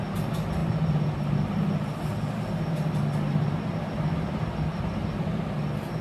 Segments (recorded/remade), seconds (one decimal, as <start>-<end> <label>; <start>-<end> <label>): 0.0-6.0 recorded

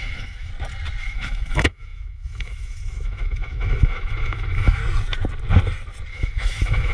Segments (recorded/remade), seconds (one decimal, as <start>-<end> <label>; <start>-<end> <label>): 0.0-0.5 remade; 0.5-1.0 recorded; 1.0-4.8 remade; 4.8-6.1 recorded; 6.1-6.9 remade

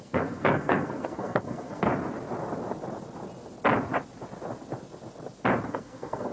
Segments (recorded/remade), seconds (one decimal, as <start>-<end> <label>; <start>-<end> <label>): 0.0-1.9 remade; 1.9-5.7 recorded; 5.7-6.3 remade